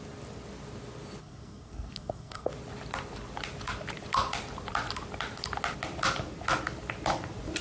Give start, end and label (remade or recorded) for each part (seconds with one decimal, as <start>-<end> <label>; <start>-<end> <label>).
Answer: 0.0-1.2 recorded; 1.2-2.5 remade; 2.5-7.6 recorded

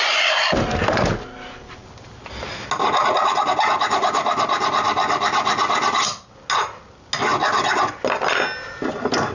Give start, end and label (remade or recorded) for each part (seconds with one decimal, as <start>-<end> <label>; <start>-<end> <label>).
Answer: 0.0-9.3 recorded

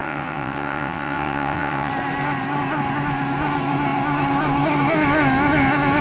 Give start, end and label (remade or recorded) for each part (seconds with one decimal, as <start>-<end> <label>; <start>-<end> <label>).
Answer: 0.0-1.9 remade; 1.9-6.0 recorded

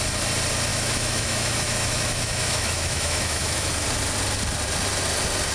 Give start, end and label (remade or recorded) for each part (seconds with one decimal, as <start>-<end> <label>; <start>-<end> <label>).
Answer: 0.0-0.7 recorded; 0.7-3.7 remade; 3.7-5.5 recorded

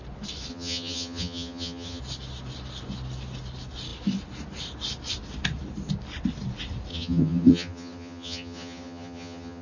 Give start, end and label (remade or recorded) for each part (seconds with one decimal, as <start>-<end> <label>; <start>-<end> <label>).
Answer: 0.0-0.5 recorded; 0.5-2.0 remade; 2.0-6.9 recorded; 6.9-9.6 remade